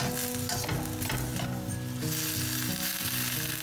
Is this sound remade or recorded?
recorded